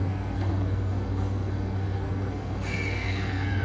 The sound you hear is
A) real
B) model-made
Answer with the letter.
B